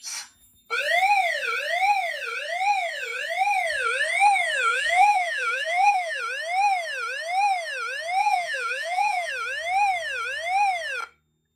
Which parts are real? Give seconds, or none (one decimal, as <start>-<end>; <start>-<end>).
0.0-4.7; 6.2-8.2; 9.3-11.6